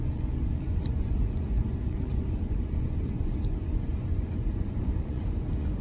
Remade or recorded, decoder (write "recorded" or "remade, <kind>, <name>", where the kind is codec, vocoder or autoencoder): remade, vocoder, Vocos